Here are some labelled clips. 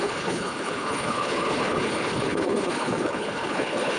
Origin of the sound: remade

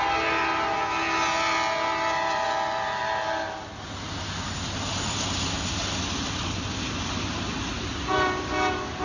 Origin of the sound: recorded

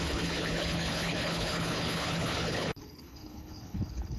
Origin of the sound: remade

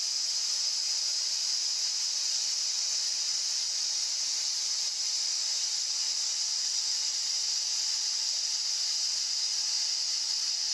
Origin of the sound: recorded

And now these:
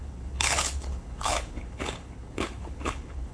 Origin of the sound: remade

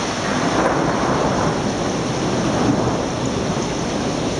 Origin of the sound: recorded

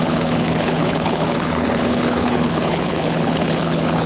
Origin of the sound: remade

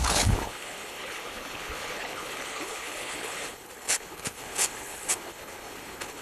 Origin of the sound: remade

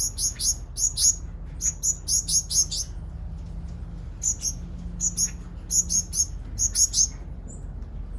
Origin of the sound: recorded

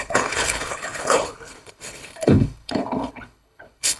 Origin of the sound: remade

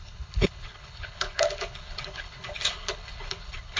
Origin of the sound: remade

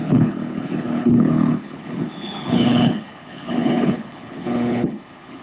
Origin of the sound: remade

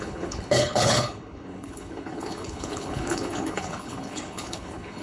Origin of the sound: remade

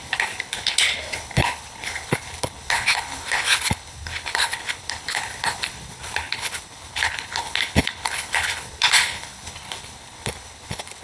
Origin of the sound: remade